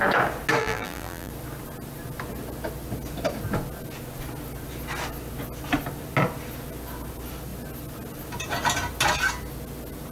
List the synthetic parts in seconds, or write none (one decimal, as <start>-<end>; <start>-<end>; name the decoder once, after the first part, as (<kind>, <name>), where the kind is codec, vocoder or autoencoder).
0.6-1.3 (vocoder, BigVGAN v2)